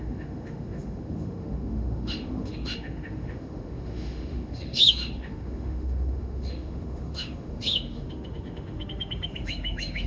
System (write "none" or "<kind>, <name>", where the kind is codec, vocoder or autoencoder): autoencoder, DAC-VAE